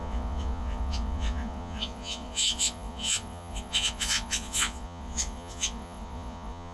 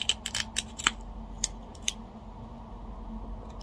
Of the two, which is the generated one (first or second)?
first